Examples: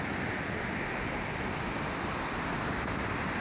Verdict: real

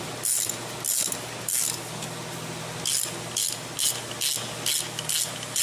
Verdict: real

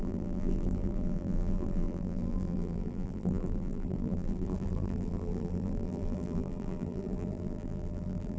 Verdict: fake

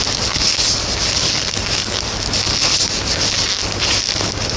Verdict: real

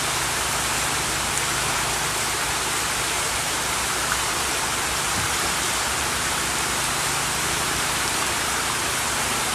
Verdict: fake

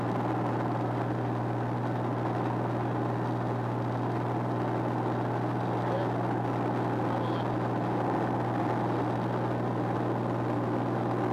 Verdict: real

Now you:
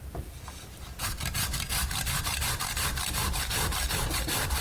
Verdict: fake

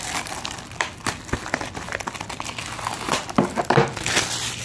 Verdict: fake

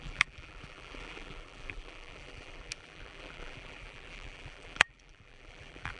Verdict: fake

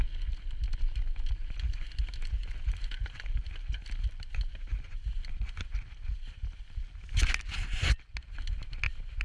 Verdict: real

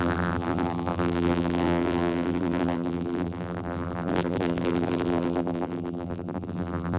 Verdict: fake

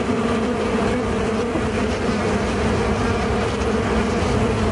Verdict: real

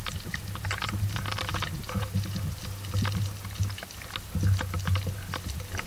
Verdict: real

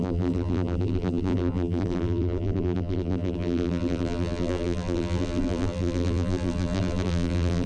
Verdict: fake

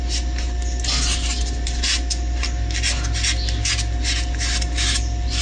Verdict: real